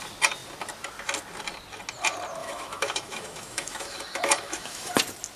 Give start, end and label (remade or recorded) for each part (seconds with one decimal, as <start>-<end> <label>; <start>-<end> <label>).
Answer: 0.0-2.4 recorded; 2.4-4.9 remade; 4.9-5.4 recorded